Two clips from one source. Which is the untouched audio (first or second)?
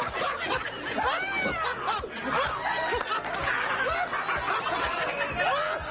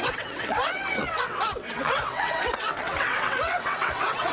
first